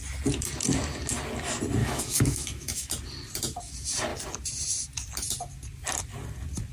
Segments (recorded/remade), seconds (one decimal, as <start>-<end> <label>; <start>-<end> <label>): 0.0-1.8 recorded; 1.8-2.9 remade; 2.9-6.7 recorded